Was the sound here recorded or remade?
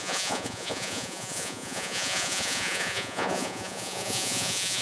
remade